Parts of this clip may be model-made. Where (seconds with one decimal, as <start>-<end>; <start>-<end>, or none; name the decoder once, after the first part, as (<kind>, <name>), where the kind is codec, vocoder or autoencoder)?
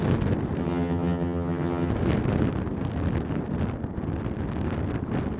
0.6-1.9 (vocoder, HiFi-GAN)